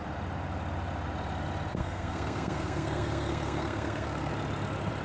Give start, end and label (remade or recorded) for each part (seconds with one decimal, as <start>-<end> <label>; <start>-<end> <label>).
0.0-1.7 recorded; 1.7-4.3 remade; 4.3-5.0 recorded